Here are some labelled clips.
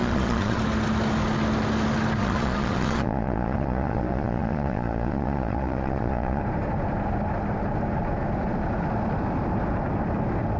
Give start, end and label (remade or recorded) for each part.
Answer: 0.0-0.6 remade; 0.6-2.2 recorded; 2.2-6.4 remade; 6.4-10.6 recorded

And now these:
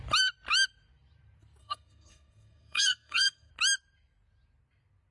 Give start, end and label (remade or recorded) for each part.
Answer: 0.0-1.6 recorded; 1.6-3.5 remade; 3.5-5.1 recorded

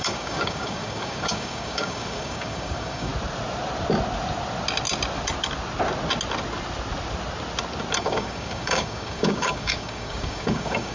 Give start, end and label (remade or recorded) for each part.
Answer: 0.0-3.1 remade; 3.1-8.0 recorded; 8.0-10.9 remade

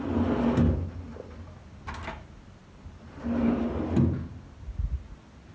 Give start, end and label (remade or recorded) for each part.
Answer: 0.0-2.6 recorded; 2.6-3.6 remade; 3.6-5.5 recorded

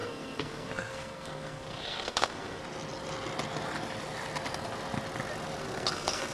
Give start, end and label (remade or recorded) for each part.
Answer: 0.0-2.6 remade; 2.6-5.6 recorded; 5.6-6.3 remade

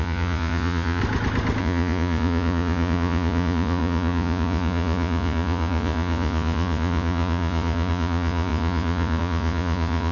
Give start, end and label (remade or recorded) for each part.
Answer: 0.0-1.0 remade; 1.0-1.6 recorded; 1.6-10.1 remade

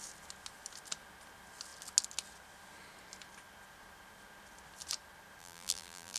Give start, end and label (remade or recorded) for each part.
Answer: 0.0-5.4 recorded; 5.4-6.2 remade